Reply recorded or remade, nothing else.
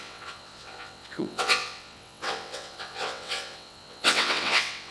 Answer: remade